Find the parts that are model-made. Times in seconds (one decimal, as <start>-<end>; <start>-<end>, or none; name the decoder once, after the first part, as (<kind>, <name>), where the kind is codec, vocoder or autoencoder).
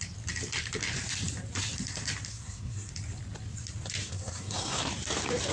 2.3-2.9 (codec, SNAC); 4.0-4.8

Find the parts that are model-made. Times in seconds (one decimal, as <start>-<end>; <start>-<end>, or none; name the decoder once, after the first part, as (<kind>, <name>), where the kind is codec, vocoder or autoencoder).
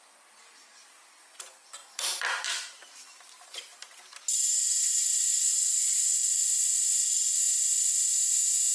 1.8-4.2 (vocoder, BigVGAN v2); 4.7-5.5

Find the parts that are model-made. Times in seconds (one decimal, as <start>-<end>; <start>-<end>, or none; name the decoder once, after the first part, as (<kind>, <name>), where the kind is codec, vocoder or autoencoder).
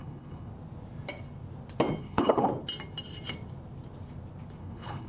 0.0-0.5 (codec, HILCodec); 2.0-2.5; 4.6-5.1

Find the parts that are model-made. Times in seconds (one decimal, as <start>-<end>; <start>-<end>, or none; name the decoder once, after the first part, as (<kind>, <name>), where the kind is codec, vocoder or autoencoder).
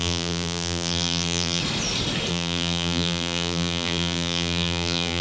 0.0-1.6 (vocoder, BigVGAN v2); 2.3-5.2